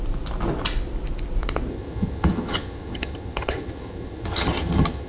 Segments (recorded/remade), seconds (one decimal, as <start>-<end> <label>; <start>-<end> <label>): 0.0-1.7 recorded; 1.7-5.1 remade